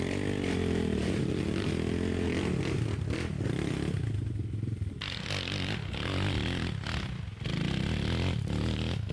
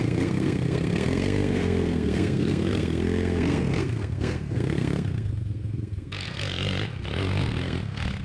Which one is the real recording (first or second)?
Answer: first